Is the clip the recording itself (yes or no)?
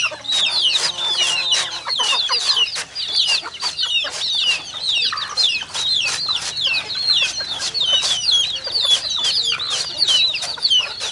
yes